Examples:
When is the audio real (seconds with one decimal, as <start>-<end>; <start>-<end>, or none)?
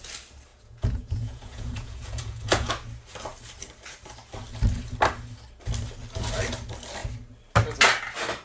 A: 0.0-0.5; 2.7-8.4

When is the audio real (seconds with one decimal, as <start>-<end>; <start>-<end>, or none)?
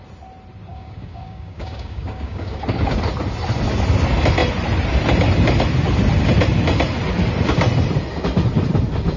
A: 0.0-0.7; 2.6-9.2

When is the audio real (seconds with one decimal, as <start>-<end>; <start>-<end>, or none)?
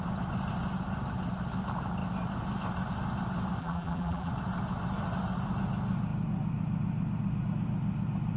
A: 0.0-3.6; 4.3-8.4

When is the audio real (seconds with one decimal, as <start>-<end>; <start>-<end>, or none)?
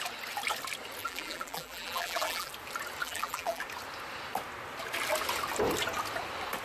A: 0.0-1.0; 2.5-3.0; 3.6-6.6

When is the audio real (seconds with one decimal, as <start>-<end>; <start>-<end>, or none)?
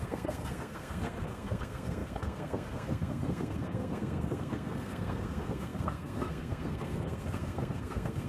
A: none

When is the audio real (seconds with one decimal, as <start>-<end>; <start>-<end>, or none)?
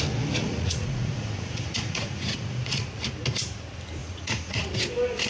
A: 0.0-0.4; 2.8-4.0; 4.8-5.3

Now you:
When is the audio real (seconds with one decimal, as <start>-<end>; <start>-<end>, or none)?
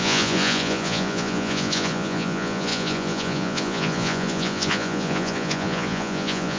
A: none